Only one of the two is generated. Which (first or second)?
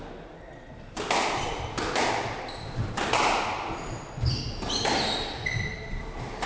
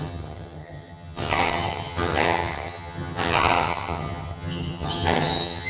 second